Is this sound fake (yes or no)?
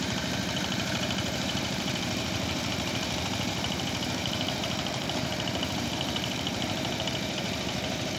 yes